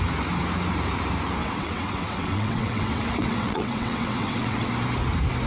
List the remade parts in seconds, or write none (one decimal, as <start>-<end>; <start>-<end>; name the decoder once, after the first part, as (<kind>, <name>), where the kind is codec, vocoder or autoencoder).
1.4-4.7 (vocoder, WaveNeXt)

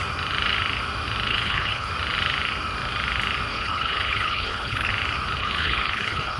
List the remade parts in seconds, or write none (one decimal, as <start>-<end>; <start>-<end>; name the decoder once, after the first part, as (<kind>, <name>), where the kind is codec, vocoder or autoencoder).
1.3-1.9 (codec, HILCodec); 3.5-4.9; 5.4-6.4

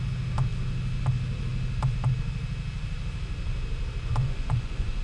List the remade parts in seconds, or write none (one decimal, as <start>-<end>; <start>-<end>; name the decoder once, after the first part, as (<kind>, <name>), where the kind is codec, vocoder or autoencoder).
4.2-5.0 (vocoder, Vocos)

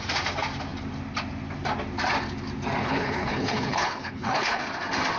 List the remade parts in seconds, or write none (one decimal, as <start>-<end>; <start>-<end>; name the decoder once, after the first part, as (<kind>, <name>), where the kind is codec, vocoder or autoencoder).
2.8-4.6 (codec, HILCodec)

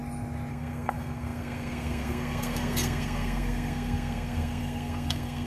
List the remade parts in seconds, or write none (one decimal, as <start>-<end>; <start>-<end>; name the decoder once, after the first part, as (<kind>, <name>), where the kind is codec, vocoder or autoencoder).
0.5-5.5 (codec, SNAC)